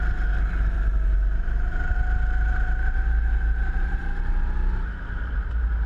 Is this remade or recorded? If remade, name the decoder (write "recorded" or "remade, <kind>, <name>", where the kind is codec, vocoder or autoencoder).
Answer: recorded